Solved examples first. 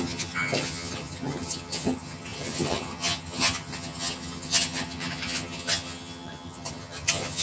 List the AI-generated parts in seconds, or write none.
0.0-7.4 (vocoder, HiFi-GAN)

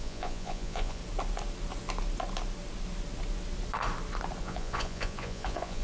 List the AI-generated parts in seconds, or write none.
0.0-1.0 (vocoder, Vocos); 4.4-5.8